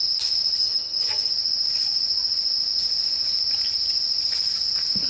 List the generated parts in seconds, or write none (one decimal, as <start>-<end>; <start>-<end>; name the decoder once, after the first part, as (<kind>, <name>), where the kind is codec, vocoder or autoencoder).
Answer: 0.6-1.3 (vocoder, HiFi-GAN)